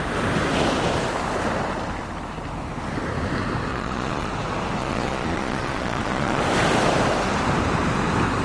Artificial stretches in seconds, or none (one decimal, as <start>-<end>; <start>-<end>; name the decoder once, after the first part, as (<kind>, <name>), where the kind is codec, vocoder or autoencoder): 3.7-4.3 (vocoder, Vocos); 4.8-6.4